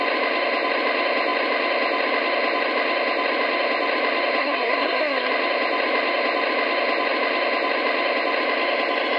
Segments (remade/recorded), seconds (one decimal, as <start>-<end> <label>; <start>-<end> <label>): 0.0-4.4 recorded; 4.4-5.3 remade; 5.3-9.2 recorded